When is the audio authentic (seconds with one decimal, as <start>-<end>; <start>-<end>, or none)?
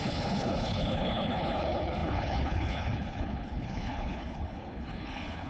none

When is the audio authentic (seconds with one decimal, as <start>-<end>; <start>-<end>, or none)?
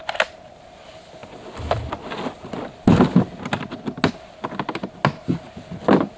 0.0-6.2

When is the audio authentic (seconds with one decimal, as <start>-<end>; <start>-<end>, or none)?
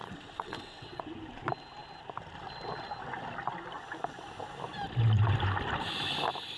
1.0-6.6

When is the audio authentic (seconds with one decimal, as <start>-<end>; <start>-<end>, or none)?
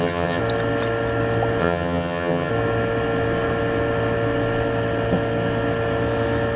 0.4-1.6; 2.5-6.6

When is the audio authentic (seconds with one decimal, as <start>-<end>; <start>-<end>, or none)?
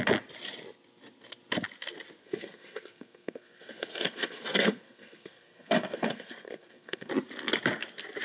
0.0-2.2; 7.1-8.2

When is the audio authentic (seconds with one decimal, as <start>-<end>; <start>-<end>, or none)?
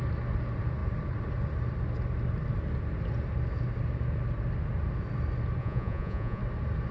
0.0-5.6; 6.4-6.9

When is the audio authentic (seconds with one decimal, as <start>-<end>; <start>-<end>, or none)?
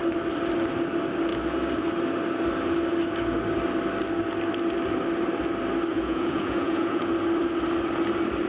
0.0-5.9; 7.1-8.5